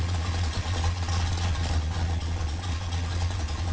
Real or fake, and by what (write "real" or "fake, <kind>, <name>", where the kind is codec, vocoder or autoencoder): fake, vocoder, Vocos